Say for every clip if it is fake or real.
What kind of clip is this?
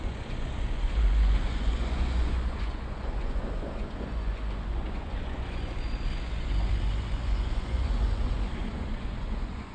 fake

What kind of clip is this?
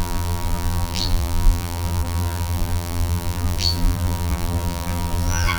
fake